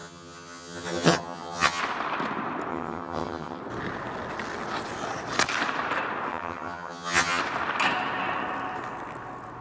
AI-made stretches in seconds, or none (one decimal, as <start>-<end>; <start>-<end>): 0.0-1.8; 2.7-3.6; 6.3-7.4

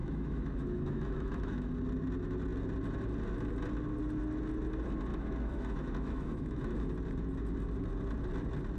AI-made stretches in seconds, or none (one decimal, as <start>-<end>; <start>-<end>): 0.0-1.7; 5.1-6.8

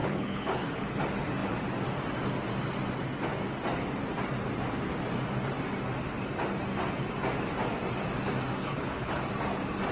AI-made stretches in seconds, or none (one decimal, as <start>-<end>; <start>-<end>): 0.0-1.0; 8.6-9.2

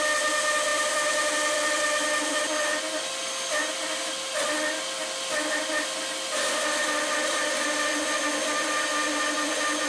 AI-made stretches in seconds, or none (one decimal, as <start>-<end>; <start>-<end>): 0.7-1.3